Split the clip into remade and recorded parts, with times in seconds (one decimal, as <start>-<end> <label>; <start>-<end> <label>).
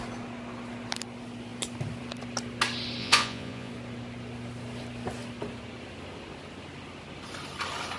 0.0-3.0 recorded; 3.0-3.7 remade; 3.7-8.0 recorded